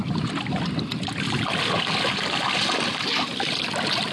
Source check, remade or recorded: recorded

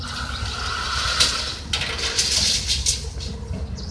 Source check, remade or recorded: recorded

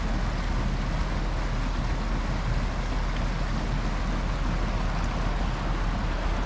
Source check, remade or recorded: recorded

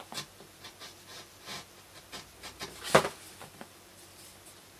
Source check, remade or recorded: recorded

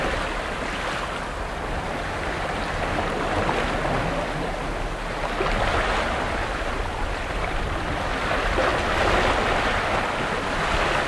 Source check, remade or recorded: recorded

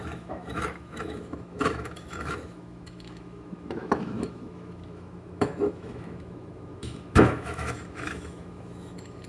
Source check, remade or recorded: remade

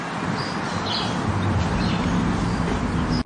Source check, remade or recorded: recorded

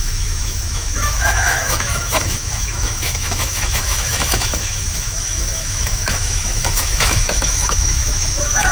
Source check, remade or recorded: remade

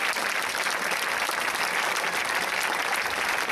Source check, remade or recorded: recorded